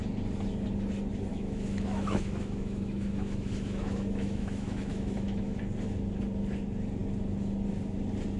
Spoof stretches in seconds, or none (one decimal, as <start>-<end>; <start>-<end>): 1.3-5.6